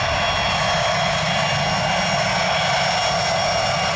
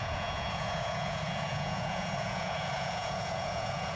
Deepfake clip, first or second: second